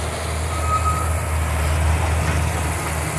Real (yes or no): yes